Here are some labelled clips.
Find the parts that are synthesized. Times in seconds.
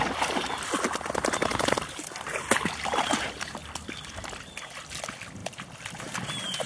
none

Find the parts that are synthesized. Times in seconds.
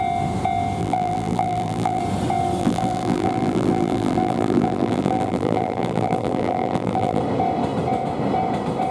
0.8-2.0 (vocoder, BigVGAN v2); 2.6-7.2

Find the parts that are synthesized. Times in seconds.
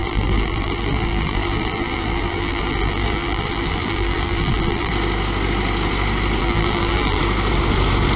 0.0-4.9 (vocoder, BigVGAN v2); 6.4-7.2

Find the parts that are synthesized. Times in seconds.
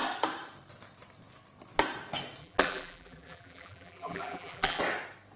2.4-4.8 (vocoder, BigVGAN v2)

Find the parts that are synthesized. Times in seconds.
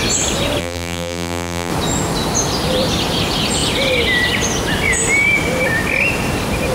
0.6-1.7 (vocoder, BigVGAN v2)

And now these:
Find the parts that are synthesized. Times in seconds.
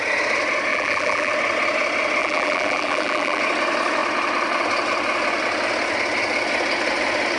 0.7-1.3 (vocoder, BigVGAN v2); 2.2-3.4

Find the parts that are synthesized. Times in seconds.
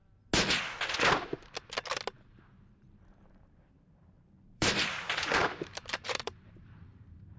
2.3-7.4 (vocoder, BigVGAN v2)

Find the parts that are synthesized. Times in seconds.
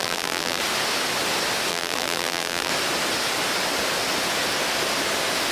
0.0-0.6 (vocoder, BigVGAN v2); 1.7-2.7